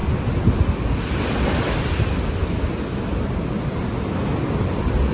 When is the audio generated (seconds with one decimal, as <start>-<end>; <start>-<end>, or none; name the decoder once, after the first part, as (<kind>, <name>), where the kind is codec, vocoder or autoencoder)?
0.8-2.4 (vocoder, BigVGAN v2)